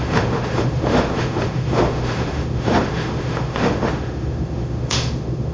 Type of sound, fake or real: fake